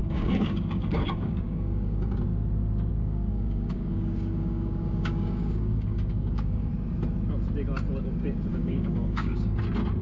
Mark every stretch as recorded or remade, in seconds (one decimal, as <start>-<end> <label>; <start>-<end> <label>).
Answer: 0.0-2.1 remade; 2.1-2.9 recorded; 2.9-6.7 remade; 6.7-8.5 recorded; 8.5-9.6 remade; 9.6-10.0 recorded